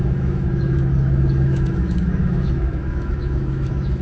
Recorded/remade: remade